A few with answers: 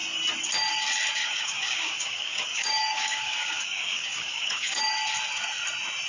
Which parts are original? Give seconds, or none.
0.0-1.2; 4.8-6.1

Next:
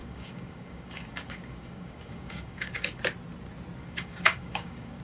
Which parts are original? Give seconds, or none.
3.0-3.8